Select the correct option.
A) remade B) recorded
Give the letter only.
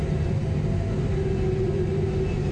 B